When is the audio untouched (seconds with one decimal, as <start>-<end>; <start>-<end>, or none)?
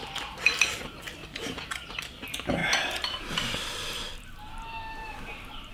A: 1.2-2.0; 2.6-5.7